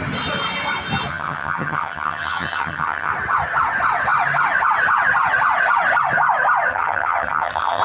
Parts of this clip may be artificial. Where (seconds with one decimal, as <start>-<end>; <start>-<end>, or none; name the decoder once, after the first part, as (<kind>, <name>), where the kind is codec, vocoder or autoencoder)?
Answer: 1.1-3.1 (vocoder, HiFi-GAN); 6.7-7.8